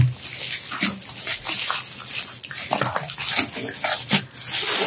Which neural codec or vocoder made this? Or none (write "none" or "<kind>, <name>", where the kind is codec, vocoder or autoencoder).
none